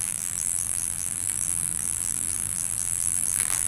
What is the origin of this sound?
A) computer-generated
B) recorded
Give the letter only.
A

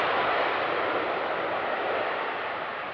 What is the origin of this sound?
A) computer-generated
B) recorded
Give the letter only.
A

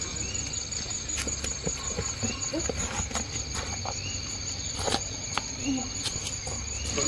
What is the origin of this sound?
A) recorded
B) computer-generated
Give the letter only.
A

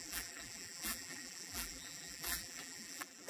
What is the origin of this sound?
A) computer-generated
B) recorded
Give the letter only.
A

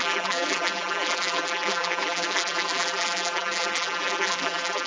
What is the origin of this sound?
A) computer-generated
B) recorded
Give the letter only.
A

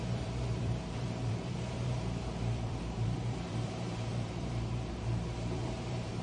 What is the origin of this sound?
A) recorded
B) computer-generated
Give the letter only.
B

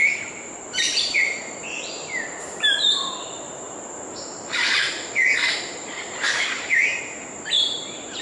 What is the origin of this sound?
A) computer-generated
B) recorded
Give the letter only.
A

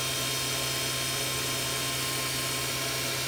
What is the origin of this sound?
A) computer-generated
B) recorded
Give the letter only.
B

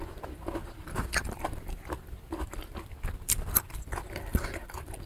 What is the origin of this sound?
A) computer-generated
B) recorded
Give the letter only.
A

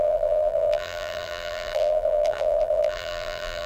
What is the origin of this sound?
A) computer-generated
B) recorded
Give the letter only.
A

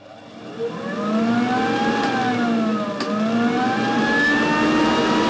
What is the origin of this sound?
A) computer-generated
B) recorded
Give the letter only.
B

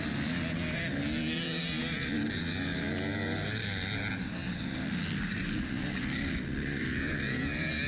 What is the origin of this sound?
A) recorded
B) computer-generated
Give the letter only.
A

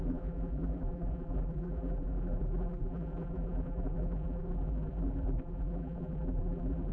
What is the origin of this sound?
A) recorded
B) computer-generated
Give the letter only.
B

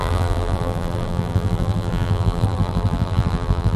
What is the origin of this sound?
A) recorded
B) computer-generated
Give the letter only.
B